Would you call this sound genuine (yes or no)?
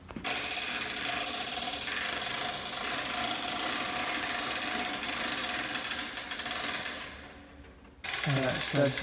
yes